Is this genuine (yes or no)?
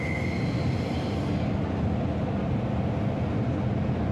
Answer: yes